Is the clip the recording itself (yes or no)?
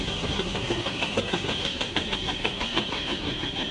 no